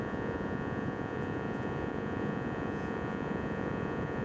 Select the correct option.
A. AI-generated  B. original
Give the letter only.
A